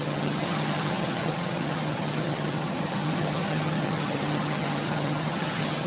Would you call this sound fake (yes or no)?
yes